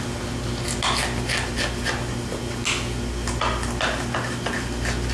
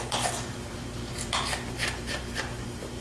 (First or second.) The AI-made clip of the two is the second